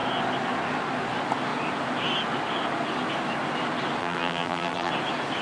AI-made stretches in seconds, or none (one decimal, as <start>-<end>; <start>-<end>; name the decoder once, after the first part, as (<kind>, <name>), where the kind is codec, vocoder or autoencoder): 4.0-4.9 (vocoder, BigVGAN v2)